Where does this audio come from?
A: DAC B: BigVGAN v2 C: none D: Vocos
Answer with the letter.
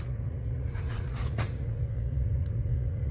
D